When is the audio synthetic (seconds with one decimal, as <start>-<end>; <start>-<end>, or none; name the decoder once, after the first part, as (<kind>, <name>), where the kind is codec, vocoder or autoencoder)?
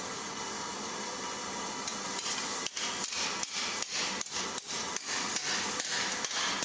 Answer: none